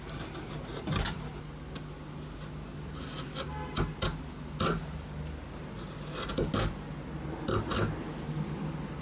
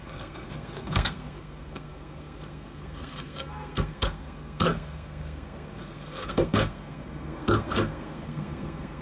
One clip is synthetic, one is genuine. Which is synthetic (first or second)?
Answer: second